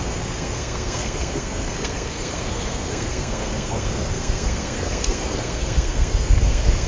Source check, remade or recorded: remade